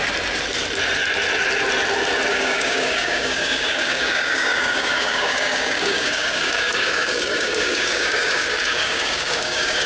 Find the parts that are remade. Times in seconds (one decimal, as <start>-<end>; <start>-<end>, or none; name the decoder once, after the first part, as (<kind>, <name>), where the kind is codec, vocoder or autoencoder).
2.3-9.9 (codec, DAC)